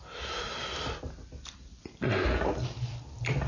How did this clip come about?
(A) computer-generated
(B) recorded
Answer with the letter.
B